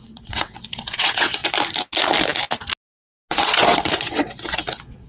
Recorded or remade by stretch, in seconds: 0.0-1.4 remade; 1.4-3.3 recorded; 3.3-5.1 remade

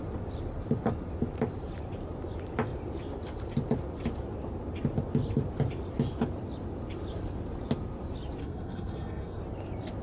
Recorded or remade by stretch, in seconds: 0.0-8.4 recorded; 8.4-9.4 remade; 9.4-10.0 recorded

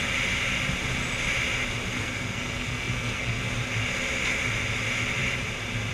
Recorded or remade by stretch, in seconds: 0.0-1.9 recorded; 1.9-3.4 remade; 3.4-5.9 recorded